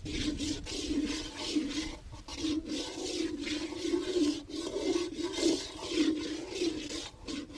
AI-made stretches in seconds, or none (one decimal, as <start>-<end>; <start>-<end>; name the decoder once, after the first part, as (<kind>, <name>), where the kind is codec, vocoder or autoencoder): none